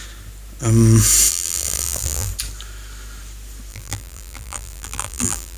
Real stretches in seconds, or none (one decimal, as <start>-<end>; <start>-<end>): 0.0-1.3; 2.3-3.7